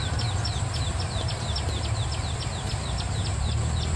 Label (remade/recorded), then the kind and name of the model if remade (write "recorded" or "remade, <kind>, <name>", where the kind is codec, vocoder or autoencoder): recorded